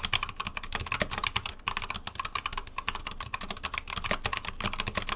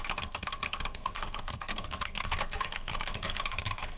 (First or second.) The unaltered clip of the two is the first